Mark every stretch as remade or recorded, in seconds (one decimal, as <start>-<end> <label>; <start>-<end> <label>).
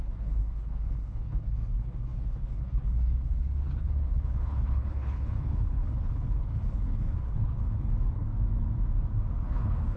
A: 0.0-8.3 remade; 8.3-9.4 recorded; 9.4-10.0 remade